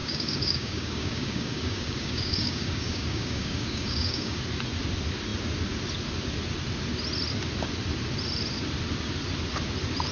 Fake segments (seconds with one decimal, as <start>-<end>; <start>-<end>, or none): 0.0-4.4